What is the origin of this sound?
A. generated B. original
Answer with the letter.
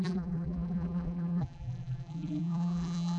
A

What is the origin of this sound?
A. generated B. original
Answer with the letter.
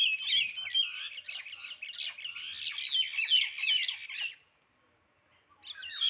B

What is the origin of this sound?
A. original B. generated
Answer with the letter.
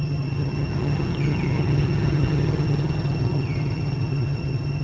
B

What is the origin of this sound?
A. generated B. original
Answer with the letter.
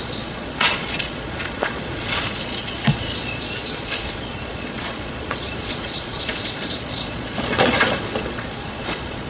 A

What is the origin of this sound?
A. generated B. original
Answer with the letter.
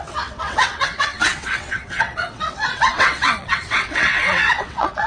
A